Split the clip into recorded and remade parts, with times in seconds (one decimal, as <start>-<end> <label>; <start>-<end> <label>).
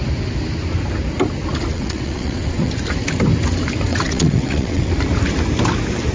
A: 0.0-1.7 recorded; 1.7-2.7 remade; 2.7-3.9 recorded; 3.9-4.9 remade; 4.9-6.1 recorded